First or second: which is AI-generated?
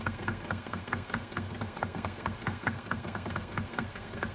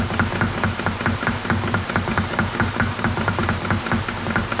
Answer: first